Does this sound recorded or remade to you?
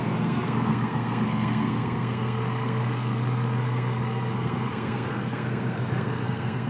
remade